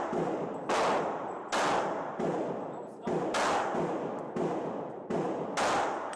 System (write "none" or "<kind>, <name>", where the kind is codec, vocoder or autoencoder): none